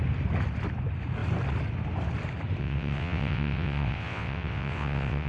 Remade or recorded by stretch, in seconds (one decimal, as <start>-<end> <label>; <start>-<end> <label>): 0.0-2.6 recorded; 2.6-5.3 remade